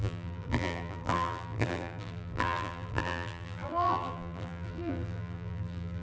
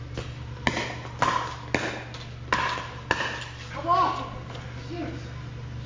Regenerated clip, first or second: first